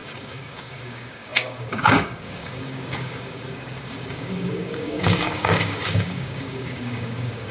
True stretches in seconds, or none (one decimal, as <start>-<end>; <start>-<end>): none